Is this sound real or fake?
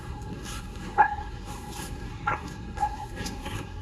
fake